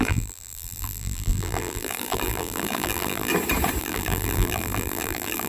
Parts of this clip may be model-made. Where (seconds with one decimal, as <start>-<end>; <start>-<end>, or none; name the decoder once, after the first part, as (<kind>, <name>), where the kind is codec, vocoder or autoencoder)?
0.0-3.3 (vocoder, BigVGAN v2); 3.8-5.5